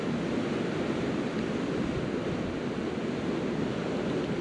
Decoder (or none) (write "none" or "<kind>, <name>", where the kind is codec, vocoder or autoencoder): none